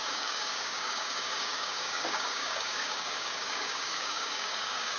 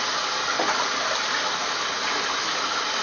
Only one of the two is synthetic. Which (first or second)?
first